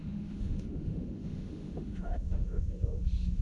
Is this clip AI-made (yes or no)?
yes